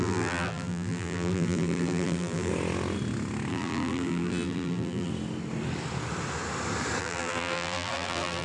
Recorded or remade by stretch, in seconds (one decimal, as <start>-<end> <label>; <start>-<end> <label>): 0.0-2.5 remade; 2.5-3.5 recorded; 3.5-5.1 remade; 5.1-7.0 recorded; 7.0-8.4 remade